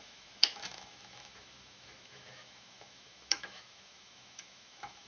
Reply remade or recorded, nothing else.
remade